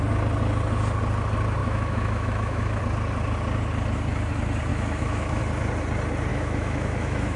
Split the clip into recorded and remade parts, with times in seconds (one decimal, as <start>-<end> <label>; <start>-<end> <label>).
0.0-1.6 recorded; 1.6-2.8 remade; 2.8-4.7 recorded; 4.7-5.4 remade; 5.4-6.3 recorded; 6.3-7.4 remade